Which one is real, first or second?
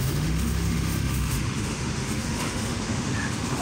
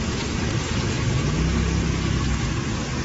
second